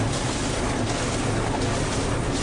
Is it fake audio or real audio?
real